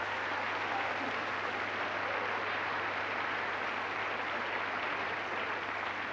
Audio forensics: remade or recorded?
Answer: recorded